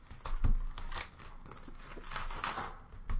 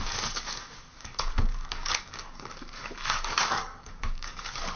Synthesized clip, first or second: second